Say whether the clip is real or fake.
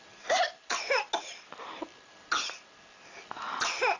real